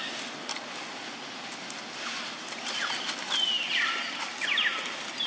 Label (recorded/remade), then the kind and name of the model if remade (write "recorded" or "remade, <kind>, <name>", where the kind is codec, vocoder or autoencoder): recorded